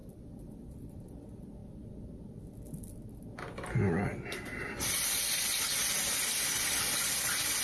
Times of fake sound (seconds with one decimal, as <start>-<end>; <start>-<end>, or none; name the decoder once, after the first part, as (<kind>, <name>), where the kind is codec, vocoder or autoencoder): 0.0-1.0 (vocoder, BigVGAN v2); 4.8-5.8